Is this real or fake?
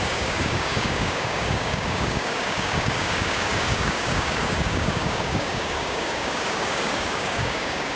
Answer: fake